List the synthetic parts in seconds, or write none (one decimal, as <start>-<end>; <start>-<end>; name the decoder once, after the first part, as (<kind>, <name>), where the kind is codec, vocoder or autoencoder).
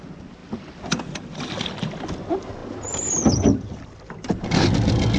none